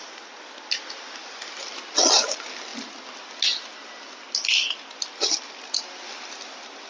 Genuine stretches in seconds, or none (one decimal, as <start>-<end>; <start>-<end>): 0.0-6.9

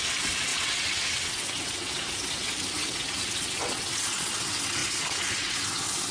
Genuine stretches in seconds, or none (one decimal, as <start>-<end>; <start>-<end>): none

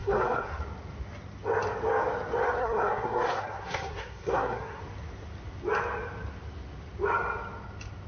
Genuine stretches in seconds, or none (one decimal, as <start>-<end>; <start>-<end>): 0.6-2.6; 4.8-8.1

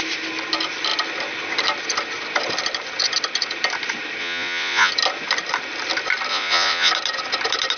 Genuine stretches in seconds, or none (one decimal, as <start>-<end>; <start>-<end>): 0.0-4.2; 4.9-6.3; 6.9-7.8